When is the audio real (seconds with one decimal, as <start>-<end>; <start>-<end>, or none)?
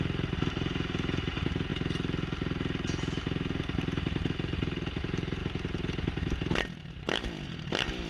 1.7-5.0; 5.4-6.9